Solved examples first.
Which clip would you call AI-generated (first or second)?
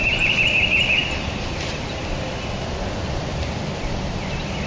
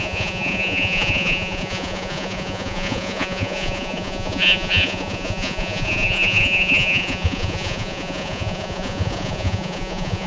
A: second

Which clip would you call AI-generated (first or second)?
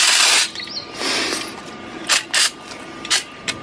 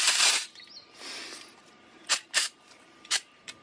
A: second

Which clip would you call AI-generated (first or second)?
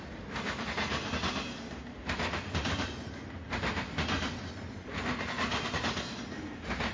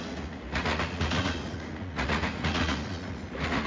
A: second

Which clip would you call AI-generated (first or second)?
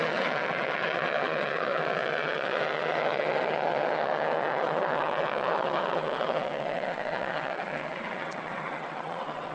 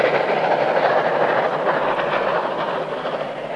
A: first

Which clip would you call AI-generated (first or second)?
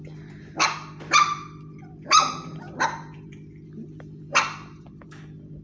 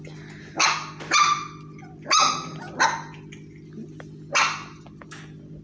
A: first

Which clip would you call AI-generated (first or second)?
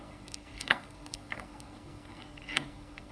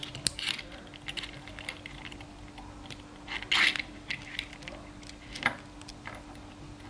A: first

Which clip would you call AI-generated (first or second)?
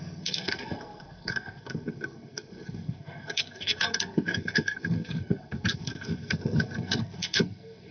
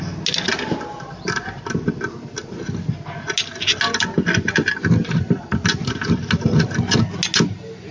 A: first